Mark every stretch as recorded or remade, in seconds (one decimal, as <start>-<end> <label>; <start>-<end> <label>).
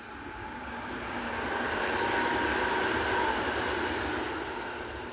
0.0-0.4 recorded; 0.4-1.3 remade; 1.3-5.1 recorded